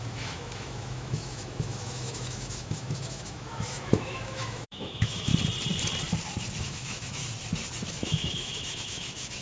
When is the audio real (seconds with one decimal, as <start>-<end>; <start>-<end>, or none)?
5.3-6.6; 7.2-7.9